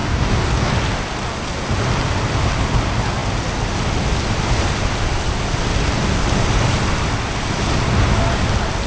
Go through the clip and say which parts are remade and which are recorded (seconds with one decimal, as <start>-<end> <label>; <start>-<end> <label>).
0.0-0.7 remade; 0.7-8.9 recorded